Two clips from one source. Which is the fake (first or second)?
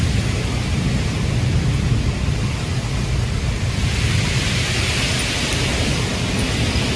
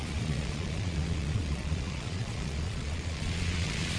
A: second